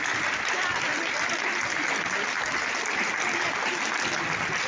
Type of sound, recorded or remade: recorded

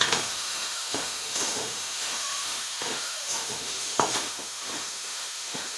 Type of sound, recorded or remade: remade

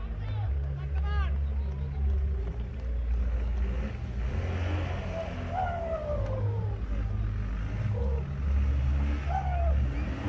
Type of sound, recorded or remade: recorded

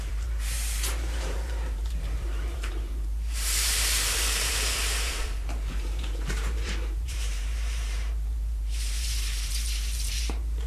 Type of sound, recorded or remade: remade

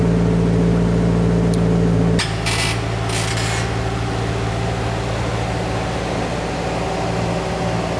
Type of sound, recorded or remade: recorded